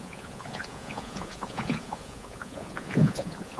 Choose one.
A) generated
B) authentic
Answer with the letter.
A